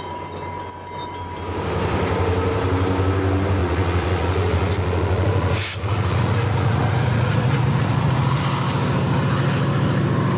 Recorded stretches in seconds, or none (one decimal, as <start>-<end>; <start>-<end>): 0.0-3.6; 8.4-10.4